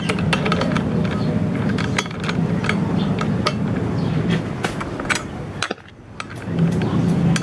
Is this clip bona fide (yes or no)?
yes